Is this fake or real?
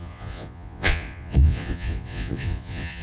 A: fake